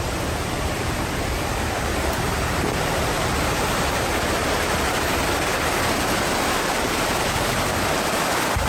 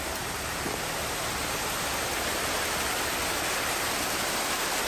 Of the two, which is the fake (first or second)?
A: first